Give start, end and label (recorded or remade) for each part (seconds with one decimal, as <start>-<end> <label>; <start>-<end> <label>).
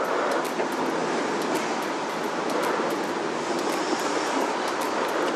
0.0-5.4 recorded